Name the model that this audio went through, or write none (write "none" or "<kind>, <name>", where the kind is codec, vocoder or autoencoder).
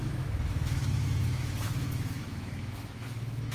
autoencoder, DAC-VAE